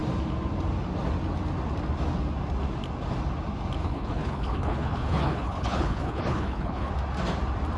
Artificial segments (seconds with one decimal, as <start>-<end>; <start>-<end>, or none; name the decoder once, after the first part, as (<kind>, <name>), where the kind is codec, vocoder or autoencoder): 3.8-6.9 (codec, HILCodec)